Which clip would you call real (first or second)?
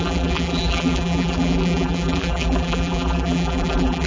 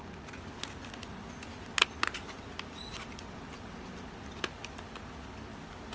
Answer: second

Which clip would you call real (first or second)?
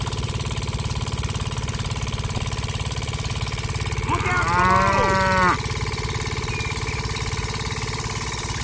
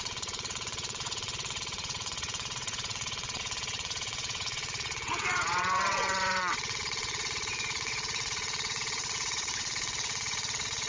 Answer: first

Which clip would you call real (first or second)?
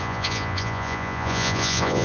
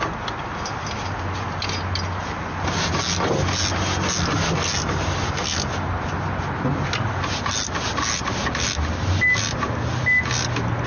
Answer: second